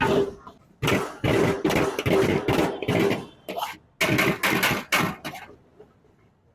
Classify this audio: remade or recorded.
recorded